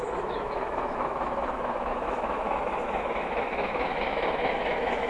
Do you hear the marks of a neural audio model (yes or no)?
yes